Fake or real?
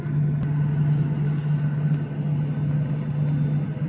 real